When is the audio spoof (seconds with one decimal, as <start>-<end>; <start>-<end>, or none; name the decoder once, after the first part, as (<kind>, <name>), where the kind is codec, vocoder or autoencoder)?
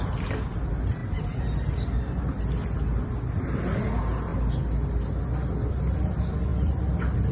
1.0-2.4 (vocoder, BigVGAN v2); 6.5-7.3